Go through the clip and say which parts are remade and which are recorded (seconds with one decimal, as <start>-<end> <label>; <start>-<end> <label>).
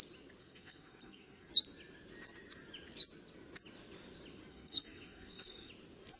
0.0-0.4 recorded; 0.4-1.5 remade; 1.5-4.5 recorded; 4.5-5.7 remade; 5.7-6.2 recorded